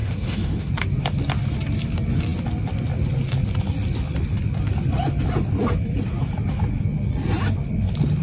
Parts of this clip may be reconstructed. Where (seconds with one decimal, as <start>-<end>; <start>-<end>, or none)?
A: 0.0-0.7